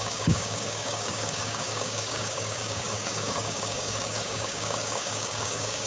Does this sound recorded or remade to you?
remade